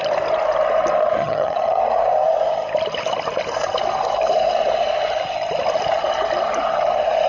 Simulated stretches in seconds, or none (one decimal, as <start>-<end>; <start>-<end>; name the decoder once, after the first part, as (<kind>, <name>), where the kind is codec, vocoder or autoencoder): 1.2-1.8 (vocoder, HiFi-GAN)